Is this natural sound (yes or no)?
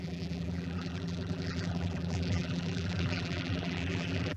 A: no